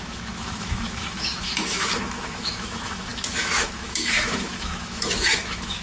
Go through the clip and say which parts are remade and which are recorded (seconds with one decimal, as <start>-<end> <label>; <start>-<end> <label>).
0.0-5.8 remade